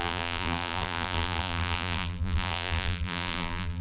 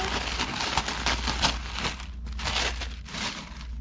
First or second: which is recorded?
second